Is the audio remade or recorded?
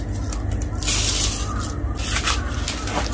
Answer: recorded